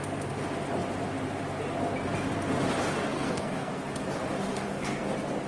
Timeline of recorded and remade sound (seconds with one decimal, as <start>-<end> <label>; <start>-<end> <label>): 0.0-3.1 recorded; 3.1-3.8 remade; 3.8-4.5 recorded; 4.5-5.1 remade; 5.1-5.5 recorded